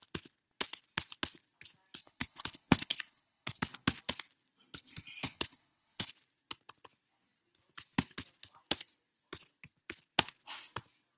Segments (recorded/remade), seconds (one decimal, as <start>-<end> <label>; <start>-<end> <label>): 0.0-2.0 recorded; 2.0-3.6 remade; 3.6-5.2 recorded; 5.2-6.1 remade; 6.1-11.2 recorded